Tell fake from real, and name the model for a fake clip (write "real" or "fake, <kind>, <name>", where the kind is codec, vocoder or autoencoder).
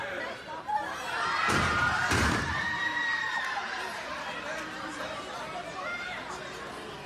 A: fake, vocoder, BigVGAN v2